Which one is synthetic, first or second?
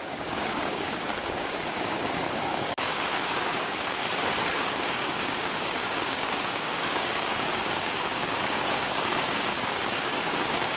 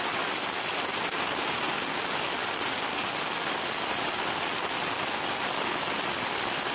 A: first